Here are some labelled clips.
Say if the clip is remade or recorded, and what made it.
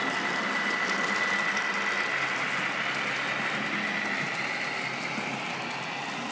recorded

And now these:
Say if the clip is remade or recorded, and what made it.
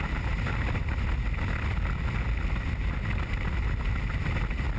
recorded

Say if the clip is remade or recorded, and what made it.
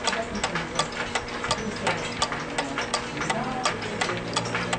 recorded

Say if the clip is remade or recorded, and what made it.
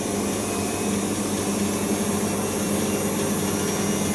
recorded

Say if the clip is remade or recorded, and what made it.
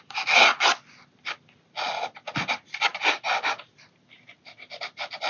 recorded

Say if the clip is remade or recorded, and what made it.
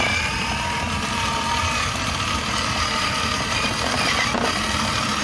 remade, vocoder, BigVGAN v2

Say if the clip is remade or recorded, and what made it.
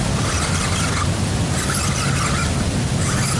recorded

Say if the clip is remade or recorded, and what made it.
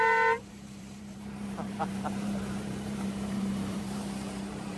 remade, vocoder, BigVGAN v2